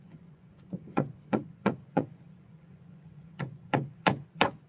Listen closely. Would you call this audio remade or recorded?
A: remade